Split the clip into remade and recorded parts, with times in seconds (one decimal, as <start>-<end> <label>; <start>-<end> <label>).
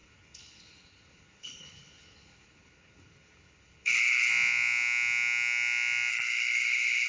0.0-4.3 remade; 4.3-6.1 recorded; 6.1-7.1 remade